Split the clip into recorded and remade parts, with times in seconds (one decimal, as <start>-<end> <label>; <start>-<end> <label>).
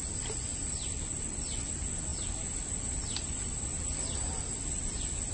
0.0-0.5 recorded; 0.5-1.6 remade; 1.6-2.1 recorded; 2.1-5.3 remade